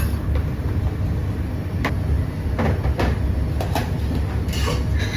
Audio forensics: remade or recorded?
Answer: recorded